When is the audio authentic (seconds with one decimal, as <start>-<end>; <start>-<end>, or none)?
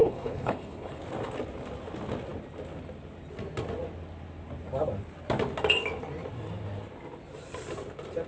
1.0-8.3